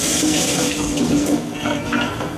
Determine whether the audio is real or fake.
fake